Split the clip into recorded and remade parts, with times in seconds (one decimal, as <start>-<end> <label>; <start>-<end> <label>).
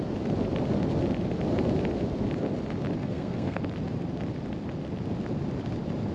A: 0.0-3.0 recorded; 3.0-3.6 remade; 3.6-6.1 recorded